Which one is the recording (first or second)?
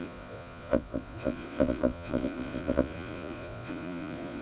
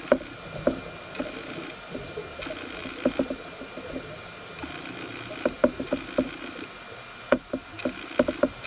second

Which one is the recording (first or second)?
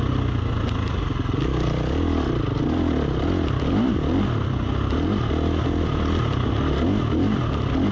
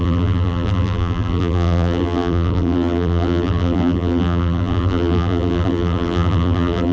first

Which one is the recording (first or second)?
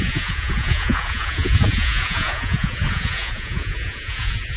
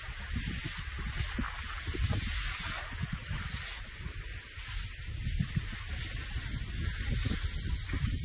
second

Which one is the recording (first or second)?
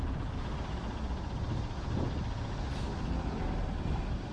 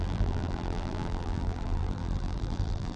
first